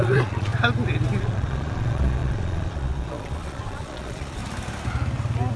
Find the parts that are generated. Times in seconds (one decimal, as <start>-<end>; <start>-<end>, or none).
0.0-0.5; 1.2-4.4